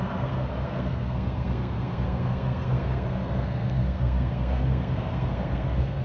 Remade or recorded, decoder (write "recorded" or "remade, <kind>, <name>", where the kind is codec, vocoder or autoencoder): remade, codec, SNAC